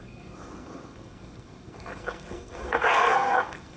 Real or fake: fake